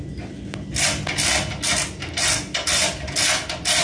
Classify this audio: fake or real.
real